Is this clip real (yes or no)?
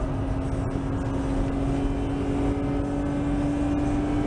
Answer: yes